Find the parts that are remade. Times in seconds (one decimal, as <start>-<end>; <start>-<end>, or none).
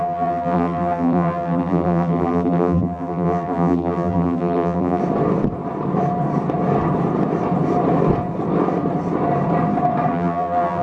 0.0-5.0; 10.1-10.8